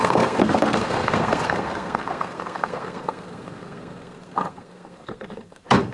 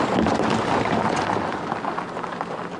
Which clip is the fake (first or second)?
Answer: first